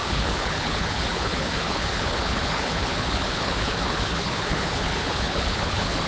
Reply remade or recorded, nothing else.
remade